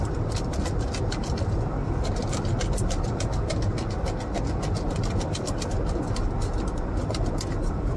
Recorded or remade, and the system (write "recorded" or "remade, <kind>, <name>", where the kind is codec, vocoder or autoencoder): recorded